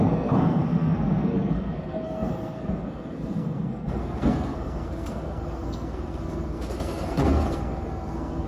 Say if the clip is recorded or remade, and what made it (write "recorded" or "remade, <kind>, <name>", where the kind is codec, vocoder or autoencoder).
remade, codec, SNAC